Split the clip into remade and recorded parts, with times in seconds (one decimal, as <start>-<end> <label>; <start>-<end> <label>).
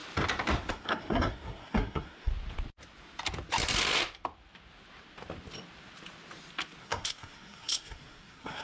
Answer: 0.0-0.7 recorded; 0.7-2.3 remade; 2.3-6.8 recorded; 6.8-8.6 remade